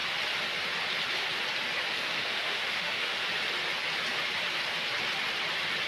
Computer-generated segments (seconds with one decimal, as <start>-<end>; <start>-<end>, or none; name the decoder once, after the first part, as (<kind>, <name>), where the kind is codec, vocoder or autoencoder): 1.9-3.2 (autoencoder, DAC-VAE)